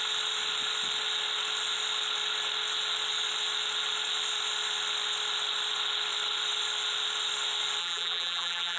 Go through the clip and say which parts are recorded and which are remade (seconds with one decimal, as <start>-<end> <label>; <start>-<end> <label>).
0.0-7.8 recorded; 7.8-8.8 remade